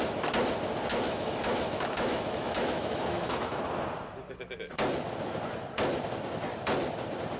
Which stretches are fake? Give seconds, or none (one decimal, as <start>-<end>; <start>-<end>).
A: 0.9-3.6